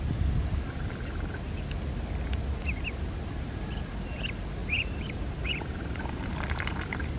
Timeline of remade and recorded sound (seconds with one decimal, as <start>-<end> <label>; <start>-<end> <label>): 0.0-4.6 recorded; 4.6-6.1 remade; 6.1-7.2 recorded